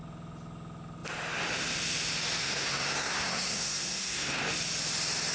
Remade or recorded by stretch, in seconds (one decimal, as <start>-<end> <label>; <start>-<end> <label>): 0.0-2.4 recorded; 2.4-4.4 remade; 4.4-5.3 recorded